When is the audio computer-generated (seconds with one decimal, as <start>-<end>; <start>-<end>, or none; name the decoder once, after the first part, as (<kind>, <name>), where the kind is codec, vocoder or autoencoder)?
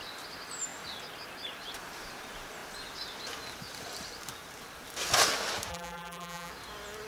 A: 5.7-6.5 (vocoder, BigVGAN v2)